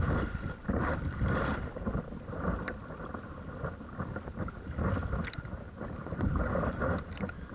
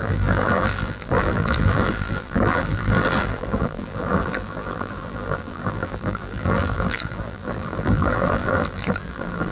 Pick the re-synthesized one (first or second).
second